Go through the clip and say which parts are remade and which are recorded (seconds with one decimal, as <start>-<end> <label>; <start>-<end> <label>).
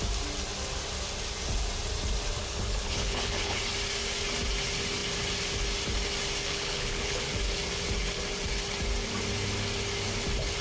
0.0-2.4 recorded; 2.4-3.6 remade; 3.6-6.5 recorded; 6.5-7.2 remade; 7.2-10.6 recorded